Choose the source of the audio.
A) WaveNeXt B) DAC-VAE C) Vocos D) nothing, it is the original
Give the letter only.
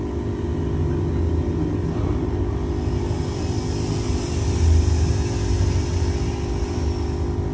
D